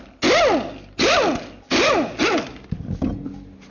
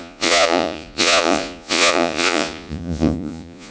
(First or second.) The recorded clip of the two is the first